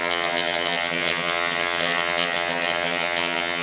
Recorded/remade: remade